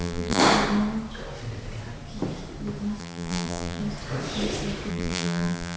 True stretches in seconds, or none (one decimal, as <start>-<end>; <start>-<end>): 0.4-3.0; 3.8-4.9